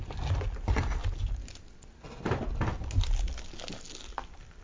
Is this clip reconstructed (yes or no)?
no